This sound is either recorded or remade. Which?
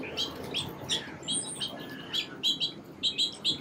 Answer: recorded